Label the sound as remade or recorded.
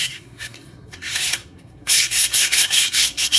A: remade